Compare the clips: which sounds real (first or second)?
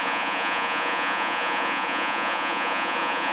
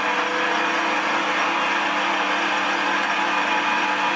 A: second